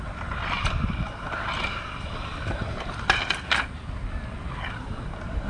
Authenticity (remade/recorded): remade